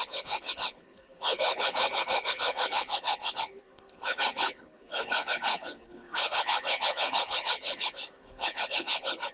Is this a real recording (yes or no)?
no